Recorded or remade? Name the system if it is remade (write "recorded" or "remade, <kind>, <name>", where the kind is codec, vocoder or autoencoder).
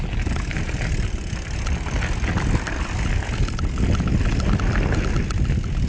recorded